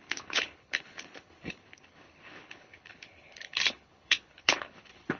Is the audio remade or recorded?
remade